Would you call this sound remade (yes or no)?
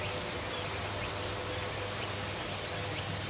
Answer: no